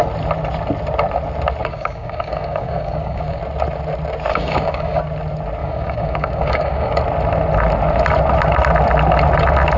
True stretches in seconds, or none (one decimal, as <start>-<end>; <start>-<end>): 0.0-1.6; 3.4-4.3; 5.0-5.6; 7.0-9.8